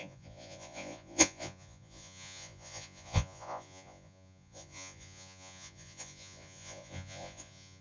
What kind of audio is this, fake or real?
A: fake